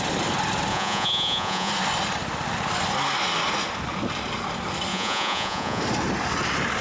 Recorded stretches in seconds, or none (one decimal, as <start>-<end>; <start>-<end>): 0.0-0.7; 1.7-4.9; 5.8-6.8